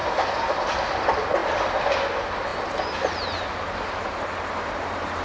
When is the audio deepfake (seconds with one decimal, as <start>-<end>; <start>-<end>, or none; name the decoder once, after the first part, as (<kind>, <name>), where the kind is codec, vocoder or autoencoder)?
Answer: none